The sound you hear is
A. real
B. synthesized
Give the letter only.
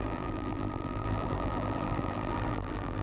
B